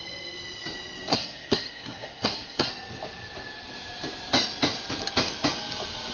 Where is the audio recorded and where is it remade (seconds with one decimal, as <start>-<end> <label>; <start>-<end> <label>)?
0.0-1.1 recorded; 1.1-2.7 remade; 2.7-6.1 recorded